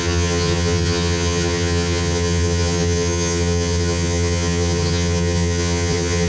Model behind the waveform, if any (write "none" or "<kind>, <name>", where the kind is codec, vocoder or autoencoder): vocoder, HiFi-GAN